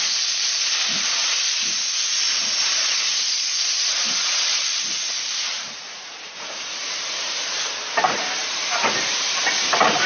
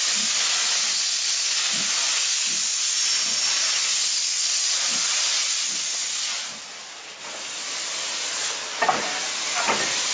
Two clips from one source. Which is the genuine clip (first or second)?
second